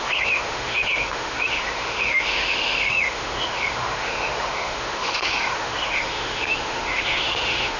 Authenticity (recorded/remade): remade